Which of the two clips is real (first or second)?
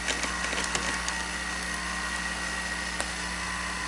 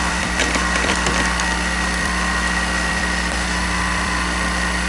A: first